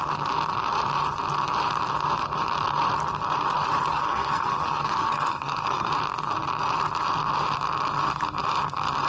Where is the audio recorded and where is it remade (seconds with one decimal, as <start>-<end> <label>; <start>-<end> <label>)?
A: 0.0-3.9 recorded; 3.9-5.9 remade; 5.9-9.1 recorded